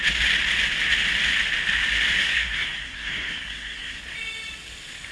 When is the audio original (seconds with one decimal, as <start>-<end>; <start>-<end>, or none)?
0.0-2.2; 4.0-5.1